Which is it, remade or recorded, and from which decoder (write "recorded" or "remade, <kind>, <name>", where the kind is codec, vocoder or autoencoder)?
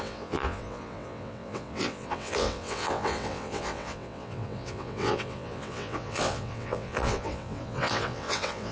remade, vocoder, WaveNeXt